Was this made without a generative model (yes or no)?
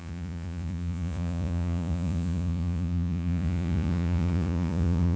no